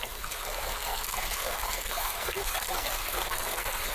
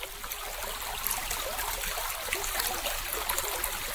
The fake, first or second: first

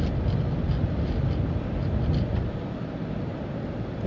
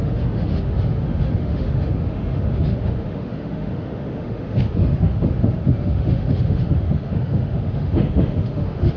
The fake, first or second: second